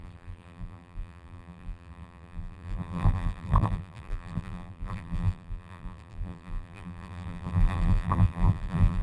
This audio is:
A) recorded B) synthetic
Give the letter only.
B